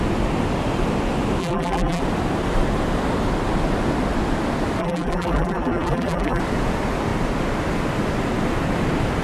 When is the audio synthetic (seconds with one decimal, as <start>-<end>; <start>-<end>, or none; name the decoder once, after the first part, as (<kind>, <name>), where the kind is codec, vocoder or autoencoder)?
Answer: 1.4-2.0 (vocoder, BigVGAN v2); 4.8-6.4